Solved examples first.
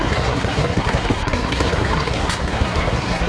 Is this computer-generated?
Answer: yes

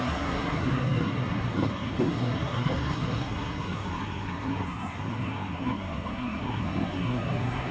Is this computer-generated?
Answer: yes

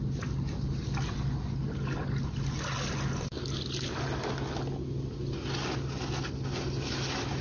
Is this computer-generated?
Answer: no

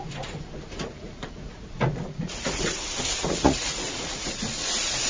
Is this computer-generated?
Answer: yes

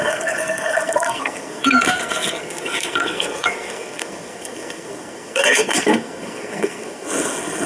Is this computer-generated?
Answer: yes